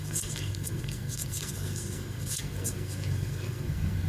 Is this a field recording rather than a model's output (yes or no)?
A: no